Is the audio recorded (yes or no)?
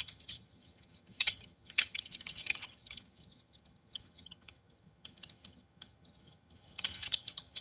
no